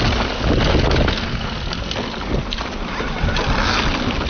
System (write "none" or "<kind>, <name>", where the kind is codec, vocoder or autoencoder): none